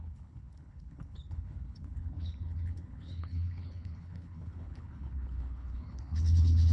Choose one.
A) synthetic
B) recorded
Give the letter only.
A